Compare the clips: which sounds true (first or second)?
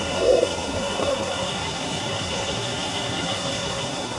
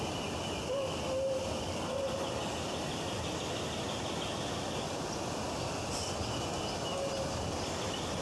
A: second